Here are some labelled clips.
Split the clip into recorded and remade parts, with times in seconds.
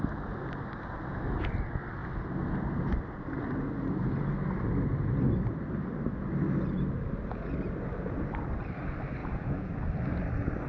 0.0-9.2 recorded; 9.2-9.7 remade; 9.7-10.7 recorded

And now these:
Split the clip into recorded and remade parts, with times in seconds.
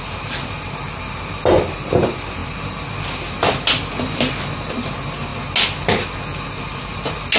0.0-7.4 recorded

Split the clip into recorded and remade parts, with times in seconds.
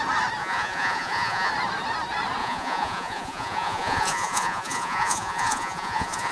0.0-0.4 recorded; 0.4-1.5 remade; 1.5-2.4 recorded; 2.4-6.3 remade